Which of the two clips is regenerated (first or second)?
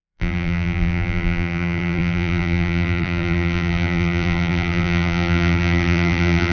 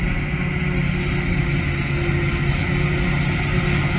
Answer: first